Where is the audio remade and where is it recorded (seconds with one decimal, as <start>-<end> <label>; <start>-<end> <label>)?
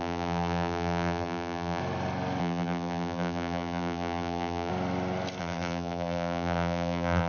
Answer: 0.0-1.8 remade; 1.8-2.4 recorded; 2.4-4.7 remade; 4.7-5.4 recorded; 5.4-7.3 remade